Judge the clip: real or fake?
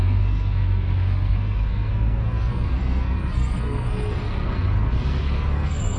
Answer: fake